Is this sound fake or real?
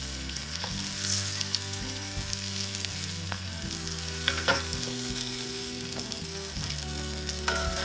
fake